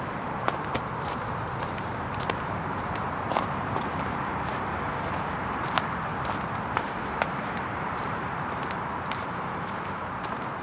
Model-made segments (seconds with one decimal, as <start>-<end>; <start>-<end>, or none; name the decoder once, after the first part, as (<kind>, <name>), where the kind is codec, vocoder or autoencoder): 0.0-6.1 (vocoder, BigVGAN v2); 6.6-10.6